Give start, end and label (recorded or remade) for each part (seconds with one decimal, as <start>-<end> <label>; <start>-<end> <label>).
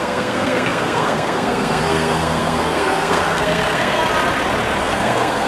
0.0-4.0 remade; 4.0-4.8 recorded; 4.8-5.5 remade